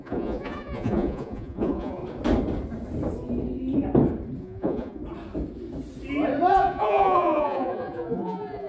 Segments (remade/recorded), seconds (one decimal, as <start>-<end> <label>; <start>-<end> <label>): 0.0-2.0 remade; 2.0-4.4 recorded; 4.4-5.0 remade; 5.0-6.5 recorded; 6.5-8.7 remade